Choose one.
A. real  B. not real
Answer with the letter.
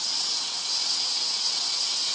B